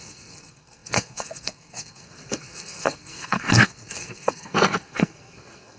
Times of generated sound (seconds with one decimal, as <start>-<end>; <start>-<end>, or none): 0.0-5.8